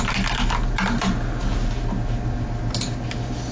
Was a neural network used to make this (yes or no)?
no